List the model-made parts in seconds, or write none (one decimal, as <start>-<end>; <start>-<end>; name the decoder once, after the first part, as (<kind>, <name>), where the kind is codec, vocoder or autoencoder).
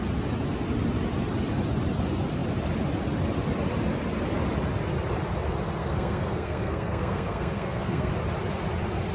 5.8-8.1 (codec, SNAC)